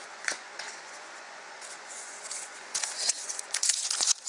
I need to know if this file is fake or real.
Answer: fake